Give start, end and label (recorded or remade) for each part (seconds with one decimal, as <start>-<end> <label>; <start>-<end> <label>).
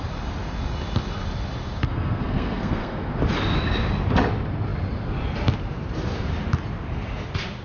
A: 0.0-1.8 recorded; 1.8-3.1 remade; 3.1-7.6 recorded